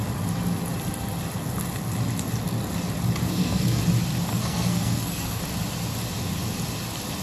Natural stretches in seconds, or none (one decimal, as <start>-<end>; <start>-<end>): 0.0-3.2; 3.8-4.3; 5.4-7.2